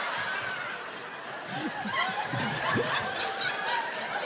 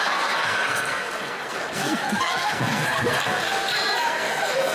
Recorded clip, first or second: first